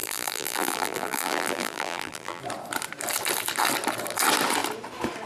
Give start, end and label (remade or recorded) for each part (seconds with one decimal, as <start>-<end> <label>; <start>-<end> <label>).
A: 0.0-2.4 remade; 2.4-5.3 recorded